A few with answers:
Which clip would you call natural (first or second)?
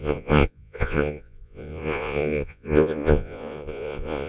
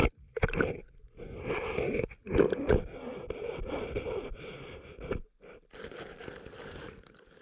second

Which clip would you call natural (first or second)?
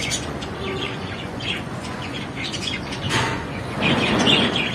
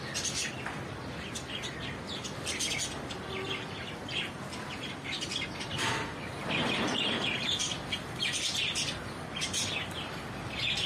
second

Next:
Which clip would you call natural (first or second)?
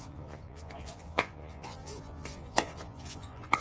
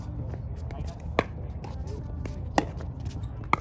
second